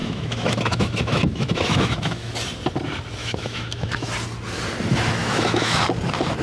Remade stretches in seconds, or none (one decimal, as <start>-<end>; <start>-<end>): 0.0-2.3; 3.2-4.1; 5.2-5.8